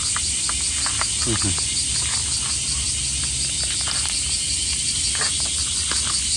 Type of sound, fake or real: real